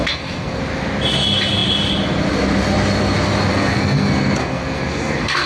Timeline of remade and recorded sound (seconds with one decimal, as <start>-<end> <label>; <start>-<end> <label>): 0.0-0.6 remade; 0.6-3.5 recorded; 3.5-5.5 remade

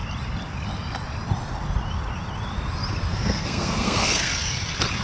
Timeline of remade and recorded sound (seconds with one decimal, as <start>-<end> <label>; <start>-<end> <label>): 0.0-3.1 recorded; 3.1-4.3 remade; 4.3-5.0 recorded

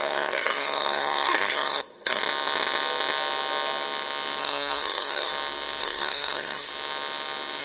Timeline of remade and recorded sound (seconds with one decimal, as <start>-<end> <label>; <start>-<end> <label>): 0.0-2.2 remade; 2.2-4.4 recorded; 4.4-5.3 remade; 5.3-5.8 recorded; 5.8-6.7 remade; 6.7-7.6 recorded